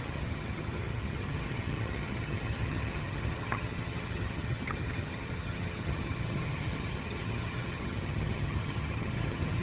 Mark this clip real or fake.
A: fake